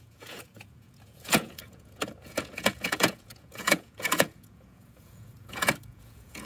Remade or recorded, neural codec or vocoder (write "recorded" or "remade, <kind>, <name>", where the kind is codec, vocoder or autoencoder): remade, vocoder, Vocos